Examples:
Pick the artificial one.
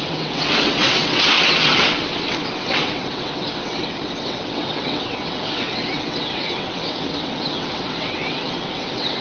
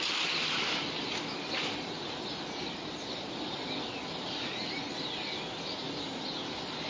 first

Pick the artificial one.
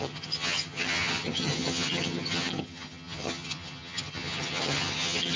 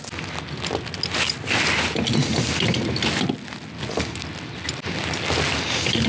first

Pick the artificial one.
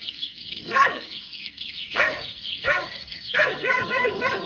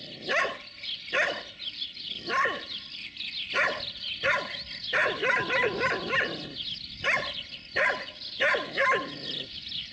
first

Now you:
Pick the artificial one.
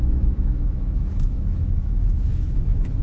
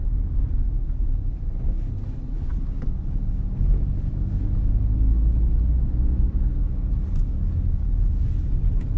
first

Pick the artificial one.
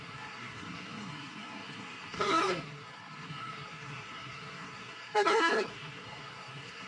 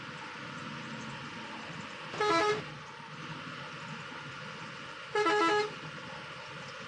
first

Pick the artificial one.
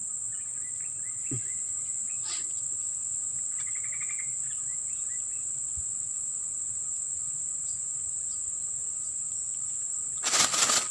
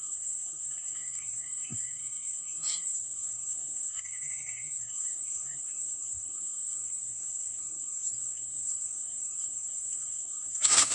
second